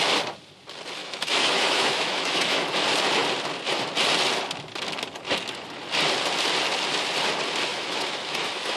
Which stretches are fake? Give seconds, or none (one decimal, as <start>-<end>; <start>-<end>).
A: 1.0-2.7; 7.7-8.8